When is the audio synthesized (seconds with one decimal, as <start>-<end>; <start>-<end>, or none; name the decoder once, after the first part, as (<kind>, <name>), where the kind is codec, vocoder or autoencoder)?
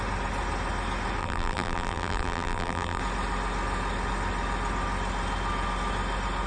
1.2-3.0 (vocoder, BigVGAN v2)